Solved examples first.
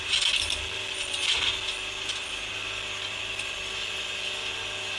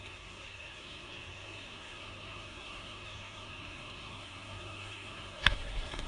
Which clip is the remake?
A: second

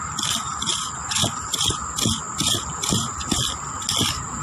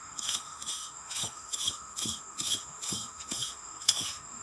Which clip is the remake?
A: second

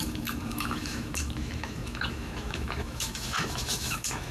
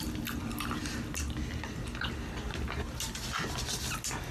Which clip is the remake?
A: first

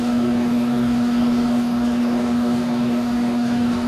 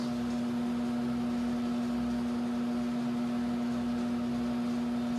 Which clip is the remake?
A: first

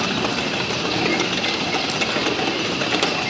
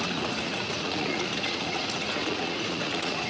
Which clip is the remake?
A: second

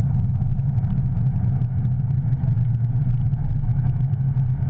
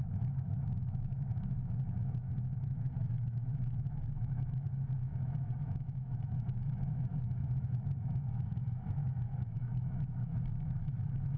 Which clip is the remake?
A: second